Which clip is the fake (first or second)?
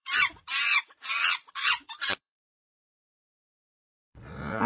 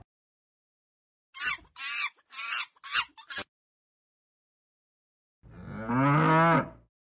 first